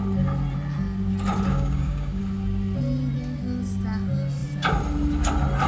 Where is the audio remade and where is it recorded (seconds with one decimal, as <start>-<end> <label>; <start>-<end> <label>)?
0.0-1.5 recorded; 1.5-2.2 remade; 2.2-5.7 recorded